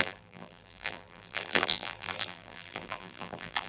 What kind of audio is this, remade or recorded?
remade